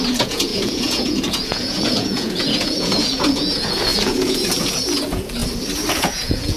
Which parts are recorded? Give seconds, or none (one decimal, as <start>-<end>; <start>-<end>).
5.4-5.9